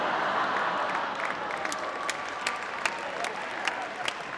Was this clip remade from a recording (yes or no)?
no